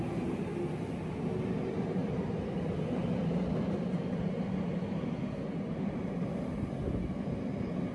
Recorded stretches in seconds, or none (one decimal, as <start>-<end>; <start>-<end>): 0.0-7.9